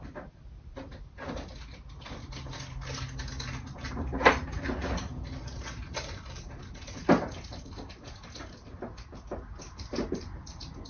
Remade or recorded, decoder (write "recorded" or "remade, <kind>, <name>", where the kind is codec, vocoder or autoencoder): recorded